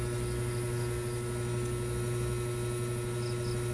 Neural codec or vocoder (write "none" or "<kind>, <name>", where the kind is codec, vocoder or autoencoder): none